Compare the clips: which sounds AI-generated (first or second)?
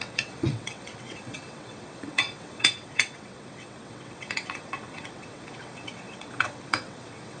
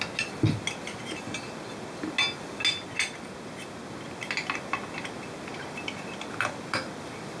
first